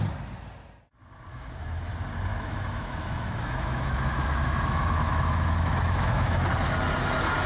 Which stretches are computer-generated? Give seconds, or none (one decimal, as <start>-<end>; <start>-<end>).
1.3-1.9; 2.3-6.5